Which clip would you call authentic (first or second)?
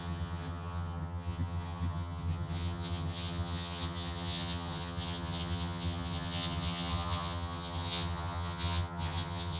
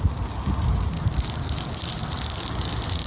second